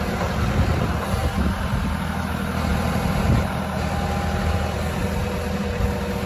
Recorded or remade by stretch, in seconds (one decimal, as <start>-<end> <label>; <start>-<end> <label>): 0.0-2.7 recorded; 2.7-3.6 remade; 3.6-6.3 recorded